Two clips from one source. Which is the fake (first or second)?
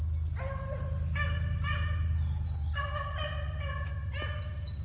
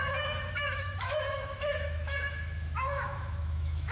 second